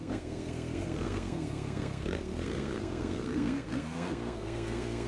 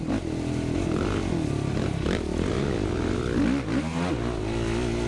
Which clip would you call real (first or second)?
second